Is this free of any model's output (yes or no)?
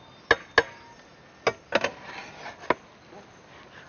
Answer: yes